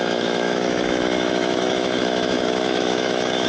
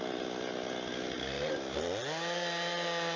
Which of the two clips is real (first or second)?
second